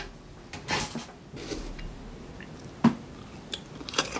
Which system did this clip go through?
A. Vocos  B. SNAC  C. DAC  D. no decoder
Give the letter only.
D